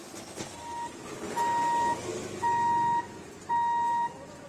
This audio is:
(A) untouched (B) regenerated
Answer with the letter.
A